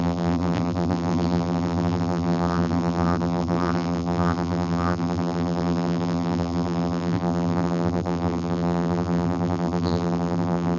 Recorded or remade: remade